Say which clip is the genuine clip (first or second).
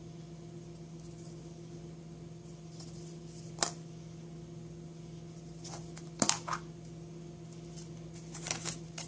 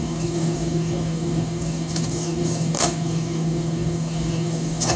first